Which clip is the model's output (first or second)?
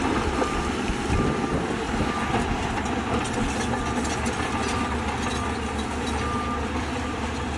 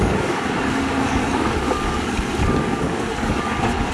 second